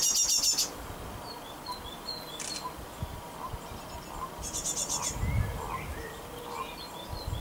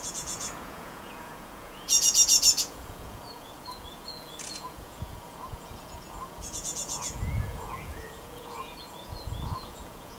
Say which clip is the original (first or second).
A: first